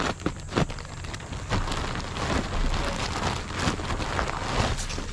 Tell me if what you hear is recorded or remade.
recorded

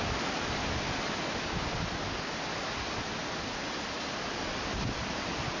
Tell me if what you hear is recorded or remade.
recorded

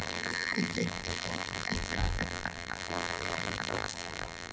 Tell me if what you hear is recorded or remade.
remade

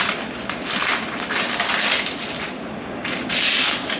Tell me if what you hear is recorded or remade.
recorded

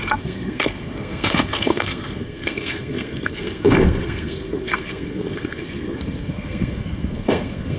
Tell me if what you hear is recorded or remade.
remade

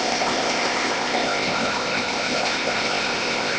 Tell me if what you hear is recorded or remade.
remade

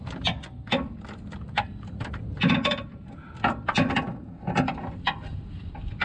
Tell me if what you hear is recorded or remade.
recorded